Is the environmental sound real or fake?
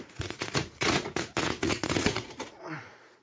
fake